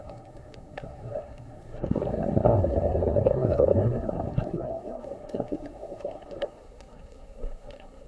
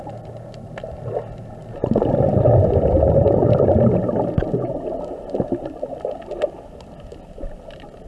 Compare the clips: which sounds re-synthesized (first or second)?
first